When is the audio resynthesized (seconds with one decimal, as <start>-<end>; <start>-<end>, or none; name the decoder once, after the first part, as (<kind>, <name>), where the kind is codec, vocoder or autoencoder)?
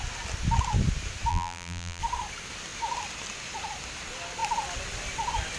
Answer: 1.3-2.0 (vocoder, BigVGAN v2)